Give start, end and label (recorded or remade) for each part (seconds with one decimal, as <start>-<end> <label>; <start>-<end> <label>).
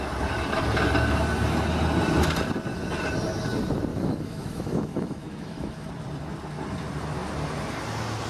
0.0-3.9 recorded; 3.9-5.9 remade; 5.9-8.3 recorded